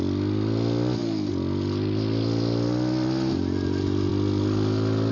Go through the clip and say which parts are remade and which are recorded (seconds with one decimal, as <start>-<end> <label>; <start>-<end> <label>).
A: 0.0-5.1 recorded